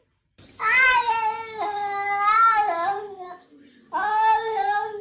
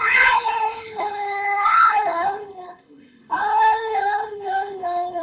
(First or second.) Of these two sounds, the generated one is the second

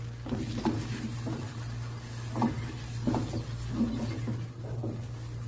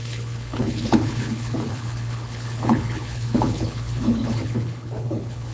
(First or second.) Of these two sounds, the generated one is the second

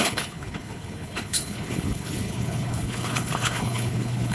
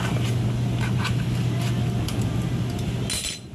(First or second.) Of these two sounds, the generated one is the first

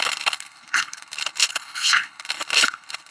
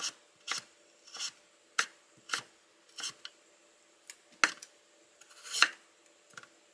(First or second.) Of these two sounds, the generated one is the first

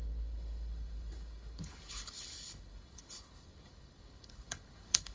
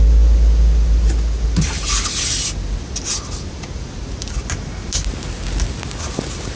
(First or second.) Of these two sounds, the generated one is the first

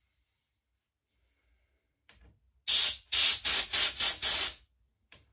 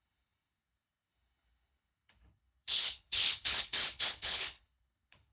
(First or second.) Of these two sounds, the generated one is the second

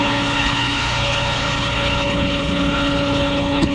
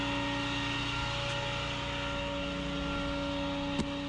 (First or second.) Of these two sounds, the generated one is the first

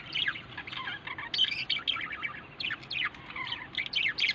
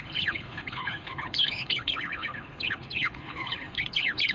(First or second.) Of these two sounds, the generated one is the second